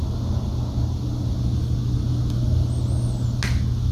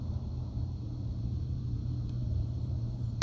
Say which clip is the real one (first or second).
first